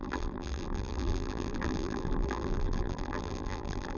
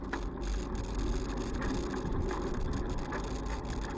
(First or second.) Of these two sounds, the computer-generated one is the first